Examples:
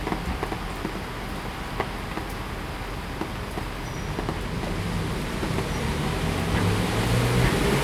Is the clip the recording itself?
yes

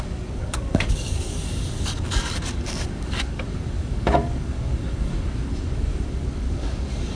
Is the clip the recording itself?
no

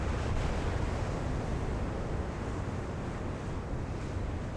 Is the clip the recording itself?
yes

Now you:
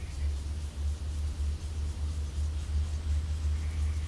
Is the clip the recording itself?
yes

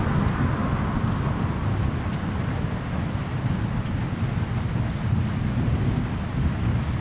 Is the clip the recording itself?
yes